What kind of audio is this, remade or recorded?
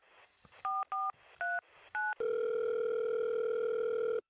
recorded